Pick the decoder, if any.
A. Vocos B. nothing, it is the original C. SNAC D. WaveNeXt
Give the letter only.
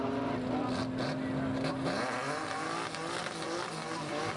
B